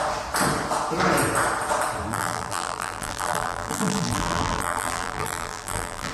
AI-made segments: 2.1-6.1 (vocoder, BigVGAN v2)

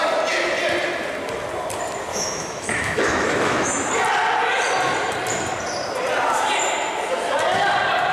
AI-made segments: 2.1-3.9 (autoencoder, DAC-VAE)

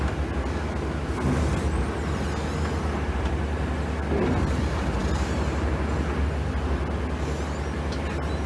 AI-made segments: none

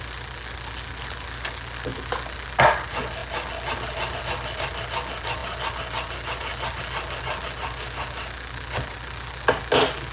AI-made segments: none

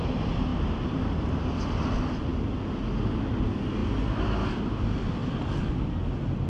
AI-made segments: 0.5-1.4 (vocoder, BigVGAN v2); 3.8-4.5; 5.2-5.7

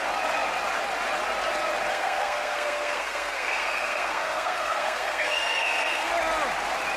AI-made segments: 1.9-6.1 (codec, SNAC)

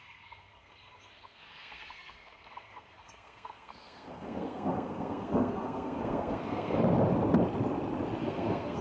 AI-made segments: 0.0-6.8 (codec, SNAC); 8.2-8.8